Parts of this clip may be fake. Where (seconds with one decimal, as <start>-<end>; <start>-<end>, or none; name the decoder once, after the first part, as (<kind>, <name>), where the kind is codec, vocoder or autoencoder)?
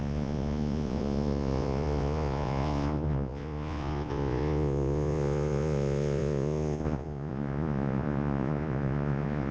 0.0-9.5 (vocoder, Vocos)